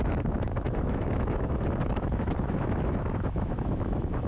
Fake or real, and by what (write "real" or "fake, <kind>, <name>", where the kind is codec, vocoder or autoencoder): fake, autoencoder, DAC-VAE